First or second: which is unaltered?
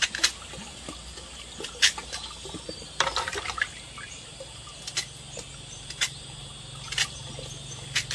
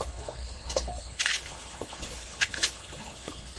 first